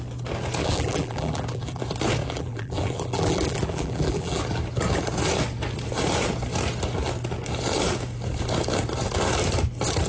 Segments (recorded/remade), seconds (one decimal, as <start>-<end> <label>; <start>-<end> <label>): 0.0-0.6 recorded; 0.6-1.8 remade; 1.8-2.2 recorded; 2.2-4.4 remade; 4.4-10.1 recorded